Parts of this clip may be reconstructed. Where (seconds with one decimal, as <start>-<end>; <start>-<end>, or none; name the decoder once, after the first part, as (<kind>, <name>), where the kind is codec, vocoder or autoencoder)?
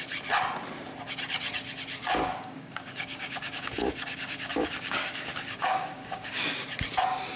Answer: 2.0-6.4 (codec, DAC)